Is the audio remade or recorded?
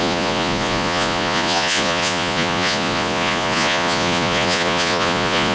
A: remade